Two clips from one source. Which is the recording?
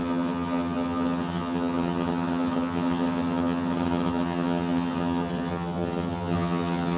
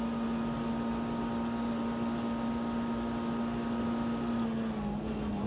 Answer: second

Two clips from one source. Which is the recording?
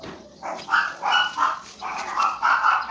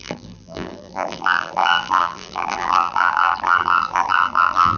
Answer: first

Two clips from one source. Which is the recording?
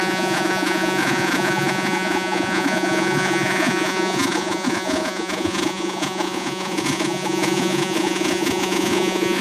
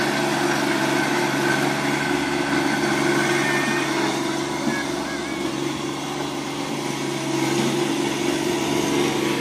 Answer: second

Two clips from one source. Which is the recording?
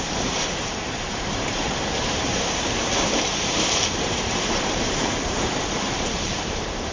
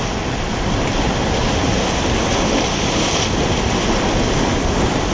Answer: second